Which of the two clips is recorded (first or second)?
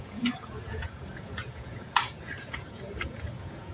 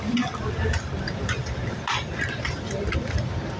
second